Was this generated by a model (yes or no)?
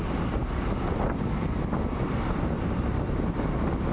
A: no